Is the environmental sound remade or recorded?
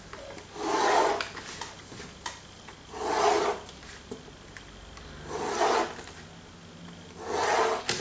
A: recorded